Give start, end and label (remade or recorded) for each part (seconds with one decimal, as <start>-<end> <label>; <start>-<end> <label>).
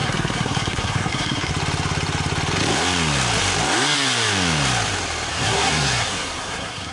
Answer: 0.0-1.5 remade; 1.5-5.3 recorded; 5.3-6.9 remade